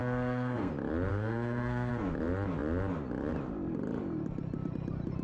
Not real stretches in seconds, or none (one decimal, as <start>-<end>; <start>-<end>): 0.0-0.7; 1.1-1.9

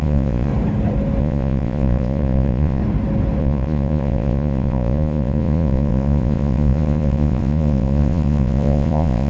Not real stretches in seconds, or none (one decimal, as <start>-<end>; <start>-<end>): 0.0-0.5; 1.2-2.8; 3.4-9.3

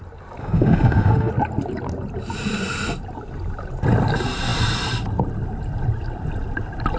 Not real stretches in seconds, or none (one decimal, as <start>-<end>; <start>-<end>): 0.4-1.3

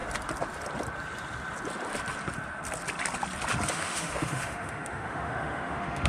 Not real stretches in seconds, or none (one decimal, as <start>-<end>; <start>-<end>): 3.7-6.1

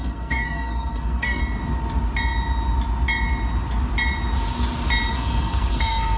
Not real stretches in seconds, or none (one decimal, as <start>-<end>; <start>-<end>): 0.0-1.4; 5.1-6.2

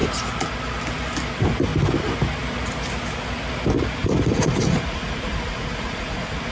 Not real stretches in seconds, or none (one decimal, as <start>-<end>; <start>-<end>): 4.0-6.5